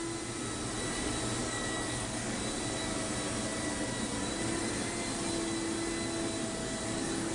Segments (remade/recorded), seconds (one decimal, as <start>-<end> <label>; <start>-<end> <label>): 0.0-1.4 recorded; 1.4-2.4 remade; 2.4-6.6 recorded; 6.6-7.3 remade